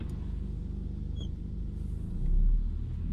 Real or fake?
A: real